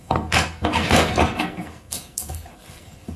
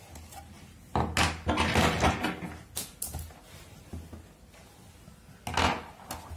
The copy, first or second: first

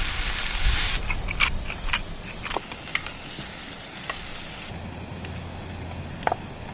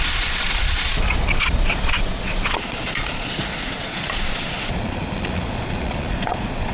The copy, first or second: second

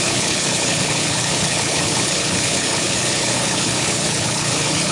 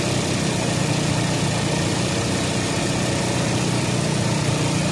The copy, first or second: first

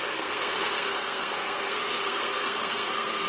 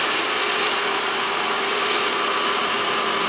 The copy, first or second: first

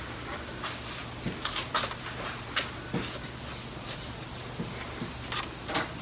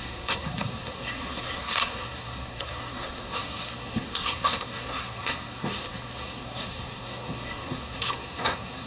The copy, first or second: second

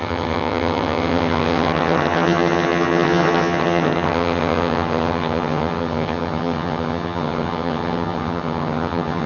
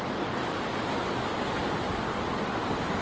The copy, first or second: first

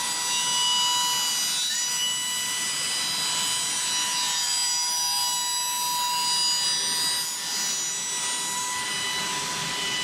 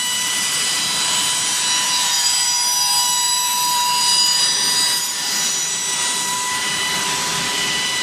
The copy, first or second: second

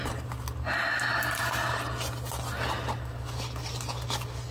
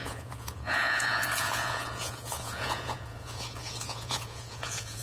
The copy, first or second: second